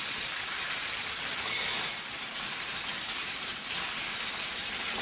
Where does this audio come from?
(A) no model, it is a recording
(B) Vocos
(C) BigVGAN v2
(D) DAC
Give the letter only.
A